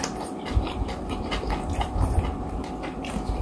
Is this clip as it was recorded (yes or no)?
yes